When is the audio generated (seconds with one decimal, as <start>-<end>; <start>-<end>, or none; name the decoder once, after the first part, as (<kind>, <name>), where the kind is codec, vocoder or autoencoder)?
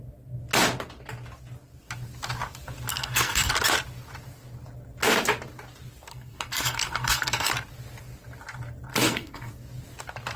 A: 2.9-3.5 (codec, SNAC); 6.1-7.5; 8.9-9.5